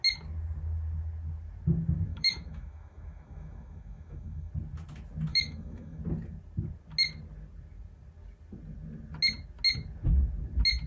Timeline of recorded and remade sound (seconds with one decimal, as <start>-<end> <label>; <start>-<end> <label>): 0.0-2.1 recorded; 2.1-4.5 remade; 4.5-5.3 recorded; 5.3-6.0 remade; 6.0-10.9 recorded